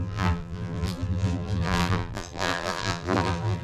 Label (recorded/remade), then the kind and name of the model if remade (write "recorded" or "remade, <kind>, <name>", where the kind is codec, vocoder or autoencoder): remade, vocoder, BigVGAN v2